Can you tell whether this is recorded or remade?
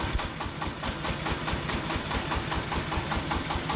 recorded